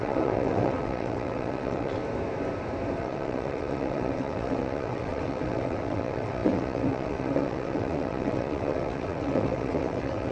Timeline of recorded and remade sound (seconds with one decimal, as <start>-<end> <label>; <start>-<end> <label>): 0.0-2.0 remade; 2.0-3.0 recorded; 3.0-10.3 remade